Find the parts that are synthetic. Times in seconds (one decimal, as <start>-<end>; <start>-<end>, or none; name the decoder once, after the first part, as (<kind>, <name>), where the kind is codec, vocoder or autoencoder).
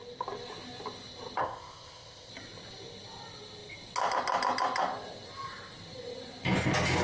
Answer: 1.4-2.3 (codec, ZipCodec)